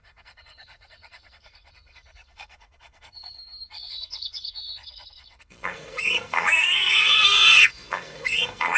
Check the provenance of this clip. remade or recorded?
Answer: remade